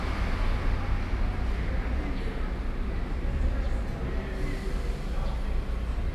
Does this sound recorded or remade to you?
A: recorded